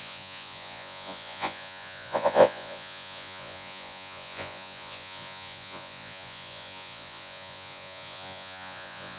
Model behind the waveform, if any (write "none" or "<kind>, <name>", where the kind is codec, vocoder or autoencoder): vocoder, Vocos